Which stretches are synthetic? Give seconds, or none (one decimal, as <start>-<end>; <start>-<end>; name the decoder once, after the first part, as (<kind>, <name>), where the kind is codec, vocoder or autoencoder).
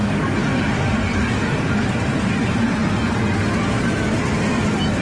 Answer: 0.4-2.4 (vocoder, BigVGAN v2)